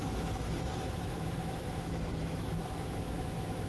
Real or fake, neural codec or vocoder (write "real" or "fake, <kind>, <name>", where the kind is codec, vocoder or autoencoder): fake, autoencoder, DAC-VAE